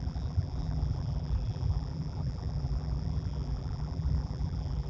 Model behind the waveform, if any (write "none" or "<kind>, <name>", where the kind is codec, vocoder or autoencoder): vocoder, BigVGAN v2